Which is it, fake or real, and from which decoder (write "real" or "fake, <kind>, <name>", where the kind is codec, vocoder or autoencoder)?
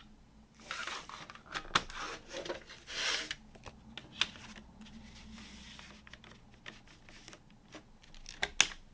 real